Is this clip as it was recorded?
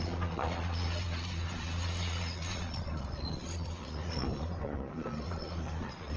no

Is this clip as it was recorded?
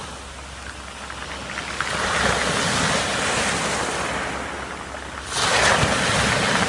yes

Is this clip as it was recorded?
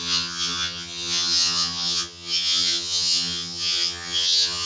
no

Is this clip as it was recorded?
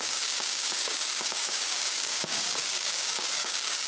no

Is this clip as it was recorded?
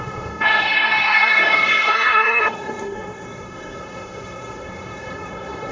no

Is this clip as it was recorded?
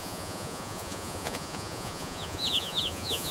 no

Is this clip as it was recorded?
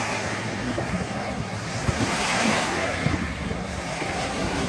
no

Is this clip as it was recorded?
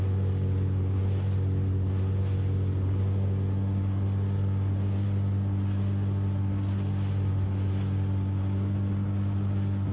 yes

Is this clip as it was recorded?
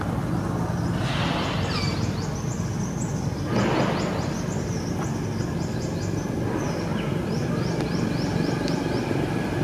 yes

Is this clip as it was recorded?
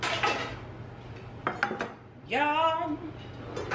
yes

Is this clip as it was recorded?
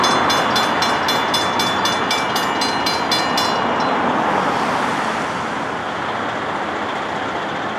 yes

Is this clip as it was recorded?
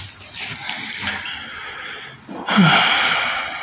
yes